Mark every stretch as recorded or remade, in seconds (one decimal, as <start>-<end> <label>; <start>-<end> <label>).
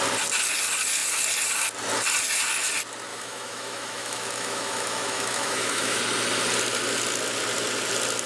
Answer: 0.0-3.1 recorded; 3.1-6.0 remade; 6.0-8.3 recorded